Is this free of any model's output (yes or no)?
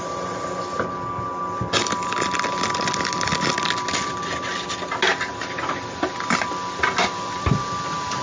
yes